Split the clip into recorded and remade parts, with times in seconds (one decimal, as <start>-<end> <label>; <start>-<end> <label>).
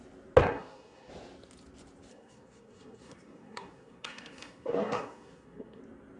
0.0-0.4 recorded; 0.4-1.1 remade; 1.1-2.1 recorded; 2.1-5.8 remade; 5.8-6.2 recorded